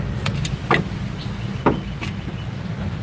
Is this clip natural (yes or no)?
yes